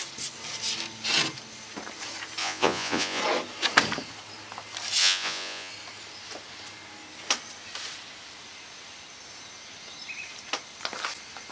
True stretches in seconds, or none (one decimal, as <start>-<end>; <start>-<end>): 0.0-2.4; 3.2-5.0; 5.7-11.5